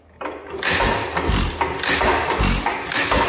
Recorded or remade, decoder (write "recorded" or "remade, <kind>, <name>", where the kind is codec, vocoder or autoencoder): recorded